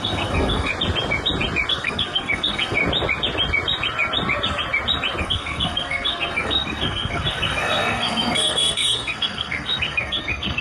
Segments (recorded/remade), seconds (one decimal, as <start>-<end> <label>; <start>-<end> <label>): 0.0-0.7 remade; 0.7-1.7 recorded; 1.7-2.8 remade; 2.8-5.2 recorded; 5.2-10.6 remade